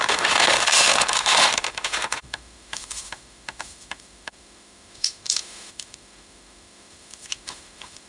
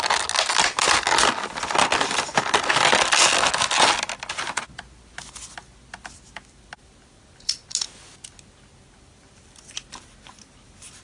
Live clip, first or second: second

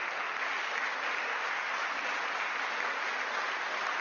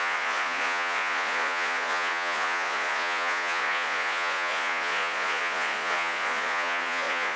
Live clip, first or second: first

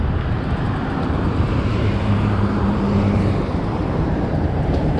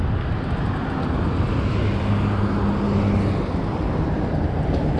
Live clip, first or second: second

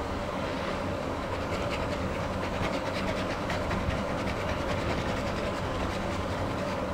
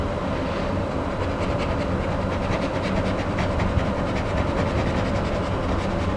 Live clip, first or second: second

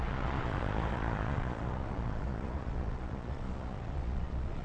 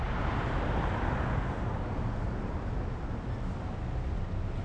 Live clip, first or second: second